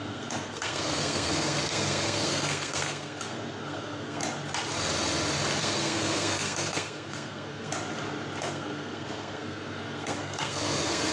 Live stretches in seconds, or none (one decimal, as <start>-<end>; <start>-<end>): 4.2-5.6; 7.7-8.4